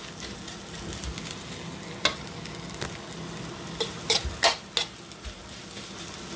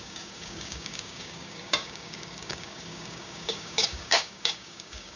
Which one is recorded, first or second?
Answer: first